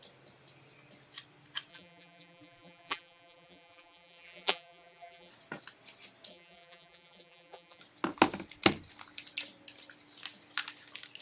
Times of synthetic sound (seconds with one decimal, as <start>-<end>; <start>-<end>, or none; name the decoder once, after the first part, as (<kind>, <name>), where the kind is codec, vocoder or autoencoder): 1.7-5.3 (vocoder, BigVGAN v2); 6.3-7.8